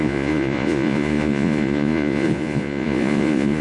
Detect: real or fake fake